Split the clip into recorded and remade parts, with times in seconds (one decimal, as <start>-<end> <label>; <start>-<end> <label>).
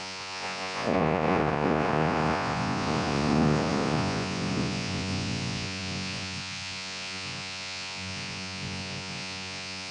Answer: 0.0-9.9 remade